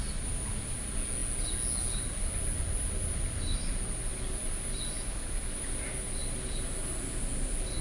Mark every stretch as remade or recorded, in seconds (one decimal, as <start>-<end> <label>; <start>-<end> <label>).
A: 0.0-7.8 recorded